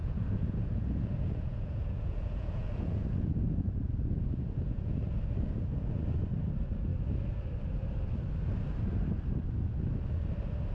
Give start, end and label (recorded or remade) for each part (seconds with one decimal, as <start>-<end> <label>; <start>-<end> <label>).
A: 0.0-4.9 remade; 4.9-10.7 recorded